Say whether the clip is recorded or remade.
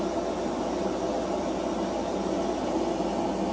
recorded